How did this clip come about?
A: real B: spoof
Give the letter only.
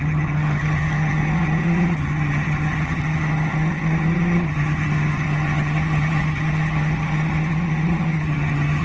B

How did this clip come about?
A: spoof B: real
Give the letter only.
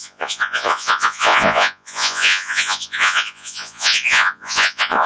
A